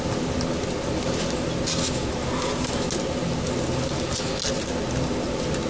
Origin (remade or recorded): recorded